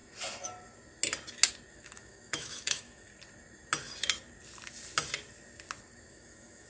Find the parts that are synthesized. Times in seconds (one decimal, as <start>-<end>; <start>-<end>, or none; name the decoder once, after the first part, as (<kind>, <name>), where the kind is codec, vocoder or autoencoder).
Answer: 1.7-3.1 (autoencoder, DAC-VAE); 6.1-6.7